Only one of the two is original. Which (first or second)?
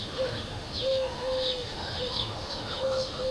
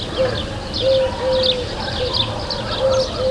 second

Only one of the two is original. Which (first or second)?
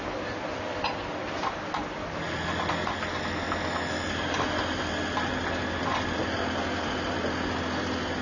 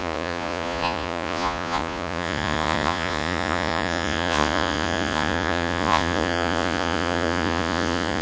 first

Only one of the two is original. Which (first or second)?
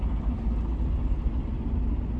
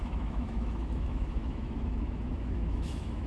first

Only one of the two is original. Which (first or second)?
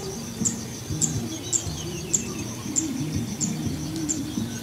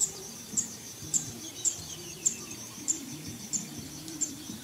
first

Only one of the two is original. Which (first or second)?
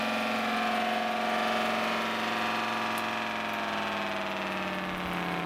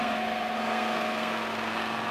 first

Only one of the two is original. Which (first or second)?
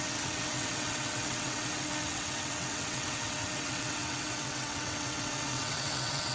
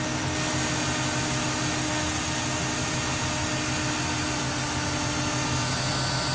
second